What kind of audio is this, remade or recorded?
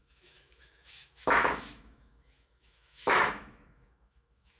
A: remade